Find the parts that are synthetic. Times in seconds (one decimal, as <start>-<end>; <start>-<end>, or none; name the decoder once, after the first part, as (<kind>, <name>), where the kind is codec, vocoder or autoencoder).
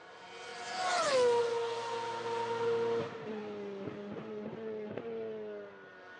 none